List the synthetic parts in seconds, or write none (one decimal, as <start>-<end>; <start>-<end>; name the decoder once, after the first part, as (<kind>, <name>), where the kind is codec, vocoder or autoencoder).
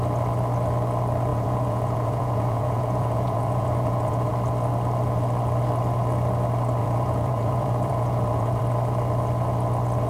1.3-4.3 (vocoder, Vocos); 6.8-8.6